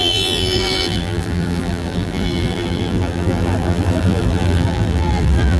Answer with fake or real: fake